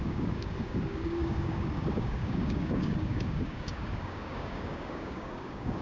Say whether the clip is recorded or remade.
remade